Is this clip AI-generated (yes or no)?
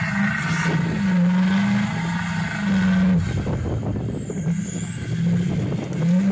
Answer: no